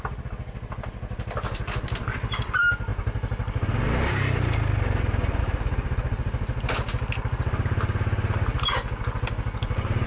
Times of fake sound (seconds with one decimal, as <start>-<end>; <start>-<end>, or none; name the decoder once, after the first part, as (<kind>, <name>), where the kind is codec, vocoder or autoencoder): none